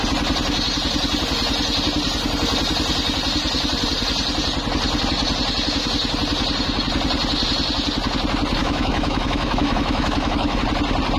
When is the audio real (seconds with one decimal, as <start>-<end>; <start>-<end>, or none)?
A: 0.0-8.6; 10.6-11.2